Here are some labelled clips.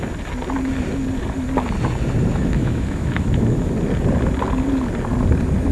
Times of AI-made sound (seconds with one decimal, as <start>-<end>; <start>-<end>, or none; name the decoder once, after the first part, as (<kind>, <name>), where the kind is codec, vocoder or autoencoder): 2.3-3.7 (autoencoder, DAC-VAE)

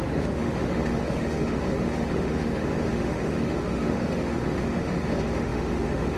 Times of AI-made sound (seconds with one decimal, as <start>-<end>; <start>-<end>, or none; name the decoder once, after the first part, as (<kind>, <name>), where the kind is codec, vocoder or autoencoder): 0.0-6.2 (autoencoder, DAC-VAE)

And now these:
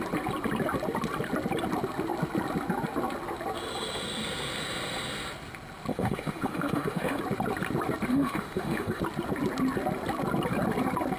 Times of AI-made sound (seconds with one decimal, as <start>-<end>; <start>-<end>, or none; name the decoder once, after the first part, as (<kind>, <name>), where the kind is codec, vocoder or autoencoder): 5.9-7.2 (autoencoder, DAC-VAE); 8.1-9.0